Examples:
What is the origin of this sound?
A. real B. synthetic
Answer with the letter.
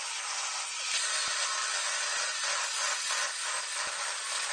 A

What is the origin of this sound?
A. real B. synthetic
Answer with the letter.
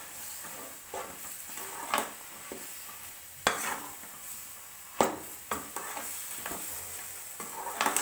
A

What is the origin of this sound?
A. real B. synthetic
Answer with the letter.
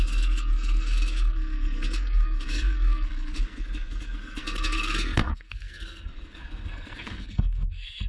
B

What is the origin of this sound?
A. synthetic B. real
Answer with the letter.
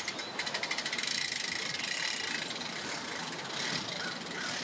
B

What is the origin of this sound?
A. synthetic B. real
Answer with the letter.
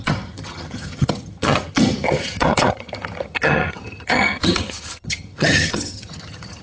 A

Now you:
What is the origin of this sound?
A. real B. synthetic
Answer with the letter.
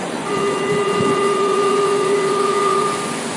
B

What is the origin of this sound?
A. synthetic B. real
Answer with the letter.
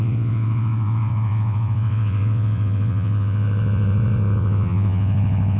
A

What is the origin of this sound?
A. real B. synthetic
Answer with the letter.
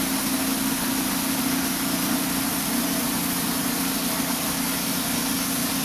A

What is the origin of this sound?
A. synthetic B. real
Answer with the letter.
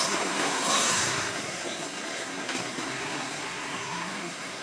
A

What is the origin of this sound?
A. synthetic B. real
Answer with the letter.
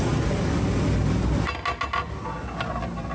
B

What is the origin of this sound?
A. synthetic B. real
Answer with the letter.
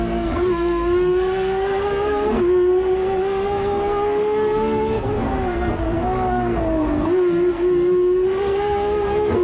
A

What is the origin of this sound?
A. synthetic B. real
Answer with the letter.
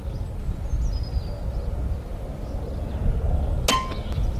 B